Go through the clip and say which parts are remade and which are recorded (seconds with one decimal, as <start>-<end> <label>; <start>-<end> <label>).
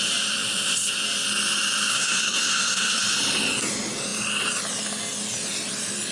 0.0-1.9 recorded; 1.9-3.0 remade; 3.0-6.1 recorded